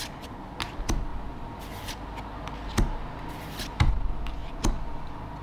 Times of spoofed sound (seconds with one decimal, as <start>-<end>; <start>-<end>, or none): none